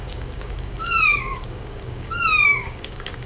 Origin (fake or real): fake